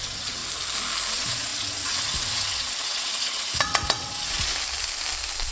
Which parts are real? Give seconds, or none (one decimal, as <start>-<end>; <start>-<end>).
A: 0.4-1.1; 4.5-5.5